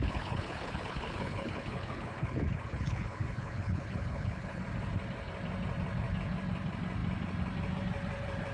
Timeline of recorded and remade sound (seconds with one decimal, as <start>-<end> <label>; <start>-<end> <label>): 0.0-4.6 remade; 4.6-8.5 recorded